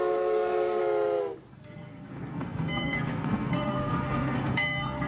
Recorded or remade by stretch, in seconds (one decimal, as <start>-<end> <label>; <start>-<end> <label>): 0.0-0.8 remade; 0.8-1.5 recorded; 1.5-5.1 remade